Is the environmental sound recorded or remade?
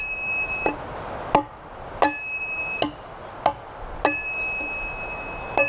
recorded